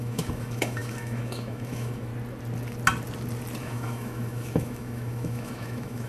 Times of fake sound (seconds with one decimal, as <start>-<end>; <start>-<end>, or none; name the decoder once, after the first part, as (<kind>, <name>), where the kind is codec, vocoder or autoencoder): 0.0-2.1 (autoencoder, DAC-VAE); 3.6-6.1